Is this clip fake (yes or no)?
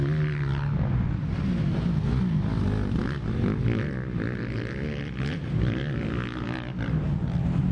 no